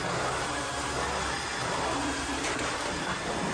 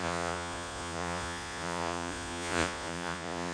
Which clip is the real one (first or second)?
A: first